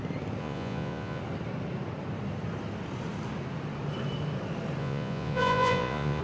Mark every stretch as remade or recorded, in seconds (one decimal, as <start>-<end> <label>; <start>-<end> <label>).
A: 0.0-0.4 recorded; 0.4-1.2 remade; 1.2-4.8 recorded; 4.8-6.2 remade